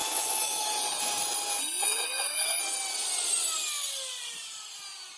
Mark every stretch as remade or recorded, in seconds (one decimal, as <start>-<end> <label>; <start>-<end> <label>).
0.0-1.0 remade; 1.0-1.6 recorded; 1.6-2.6 remade; 2.6-5.2 recorded